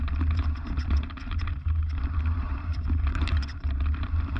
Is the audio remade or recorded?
remade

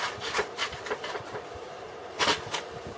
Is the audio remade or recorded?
remade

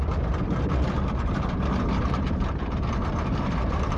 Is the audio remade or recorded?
remade